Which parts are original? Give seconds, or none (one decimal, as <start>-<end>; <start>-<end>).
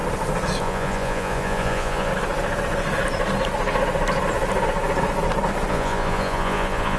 0.0-0.6; 2.1-5.7